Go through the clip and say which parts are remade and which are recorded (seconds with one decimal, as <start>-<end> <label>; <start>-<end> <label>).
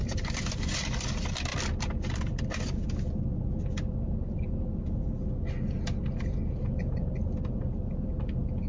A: 0.0-0.9 remade; 0.9-1.5 recorded; 1.5-2.4 remade; 2.4-8.7 recorded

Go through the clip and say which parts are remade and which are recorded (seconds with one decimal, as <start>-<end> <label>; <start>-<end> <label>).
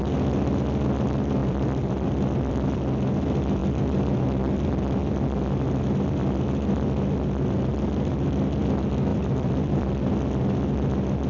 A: 0.0-1.4 recorded; 1.4-2.5 remade; 2.5-9.1 recorded; 9.1-10.1 remade; 10.1-11.3 recorded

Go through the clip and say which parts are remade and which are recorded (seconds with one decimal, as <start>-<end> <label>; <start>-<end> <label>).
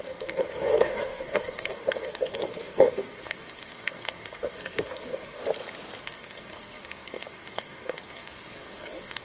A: 0.0-5.4 remade; 5.4-6.0 recorded; 6.0-9.2 remade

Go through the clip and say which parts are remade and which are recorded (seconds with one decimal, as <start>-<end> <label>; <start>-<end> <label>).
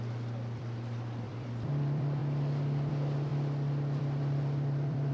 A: 0.0-2.2 remade; 2.2-2.9 recorded; 2.9-3.3 remade; 3.3-4.0 recorded; 4.0-5.1 remade